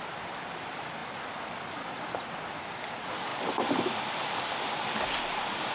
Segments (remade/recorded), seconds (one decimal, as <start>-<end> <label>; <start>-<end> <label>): 0.0-5.7 recorded